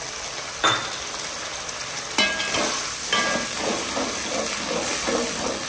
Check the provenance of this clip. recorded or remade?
recorded